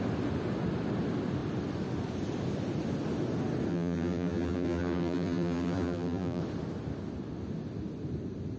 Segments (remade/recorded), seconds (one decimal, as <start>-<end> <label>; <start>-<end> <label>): 0.0-3.7 recorded; 3.7-6.4 remade; 6.4-8.6 recorded